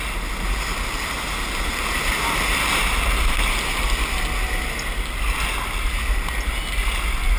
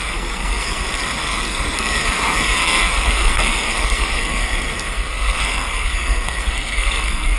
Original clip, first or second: first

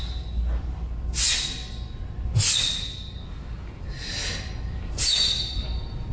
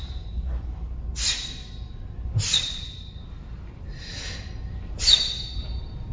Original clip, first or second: first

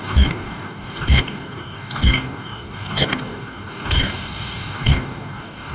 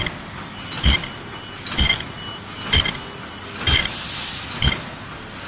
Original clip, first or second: second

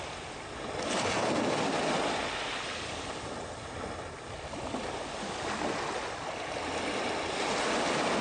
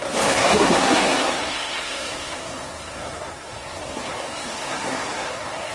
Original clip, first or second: first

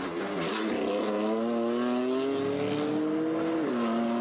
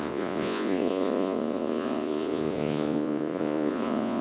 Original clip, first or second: first